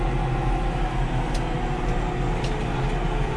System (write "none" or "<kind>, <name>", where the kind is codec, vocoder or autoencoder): none